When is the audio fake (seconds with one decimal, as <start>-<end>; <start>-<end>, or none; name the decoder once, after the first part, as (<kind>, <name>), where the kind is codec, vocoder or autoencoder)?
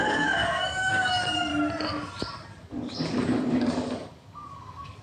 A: 0.0-1.5 (codec, DAC); 2.6-5.0